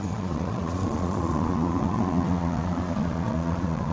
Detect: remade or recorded remade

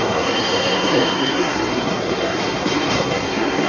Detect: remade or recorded remade